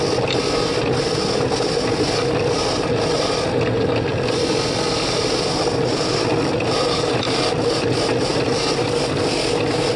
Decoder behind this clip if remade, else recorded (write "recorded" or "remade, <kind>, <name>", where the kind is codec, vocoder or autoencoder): recorded